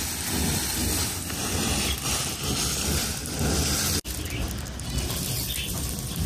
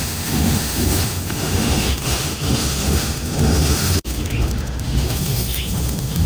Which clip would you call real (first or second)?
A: first